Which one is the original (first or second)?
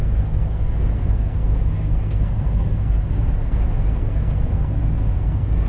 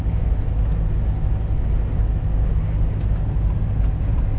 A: second